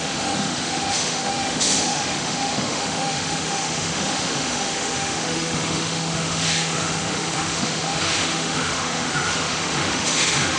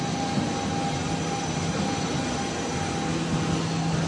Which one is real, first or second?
second